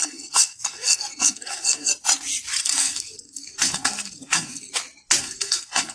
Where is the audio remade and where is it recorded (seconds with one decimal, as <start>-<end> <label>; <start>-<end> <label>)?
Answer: 0.0-1.9 remade; 1.9-2.6 recorded; 2.6-4.7 remade; 4.7-5.2 recorded; 5.2-5.9 remade